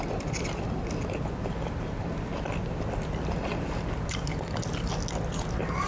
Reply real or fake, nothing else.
real